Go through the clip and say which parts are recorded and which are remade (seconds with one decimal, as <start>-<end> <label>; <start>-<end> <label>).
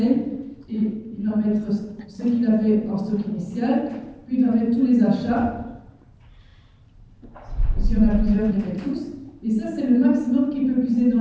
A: 0.0-1.5 remade; 1.5-3.1 recorded; 3.1-4.2 remade; 4.2-5.3 recorded; 5.3-11.2 remade